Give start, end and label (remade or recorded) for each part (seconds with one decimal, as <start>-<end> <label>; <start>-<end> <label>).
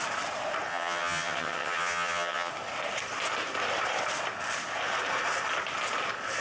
0.0-0.7 recorded; 0.7-2.5 remade; 2.5-6.4 recorded